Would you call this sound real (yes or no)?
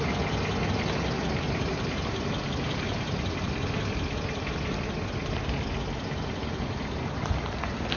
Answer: yes